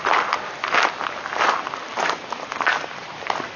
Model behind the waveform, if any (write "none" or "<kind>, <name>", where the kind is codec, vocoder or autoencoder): none